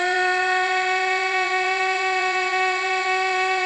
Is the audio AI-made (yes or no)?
yes